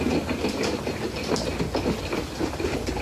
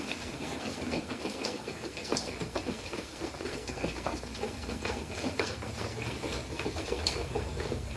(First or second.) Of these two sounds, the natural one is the first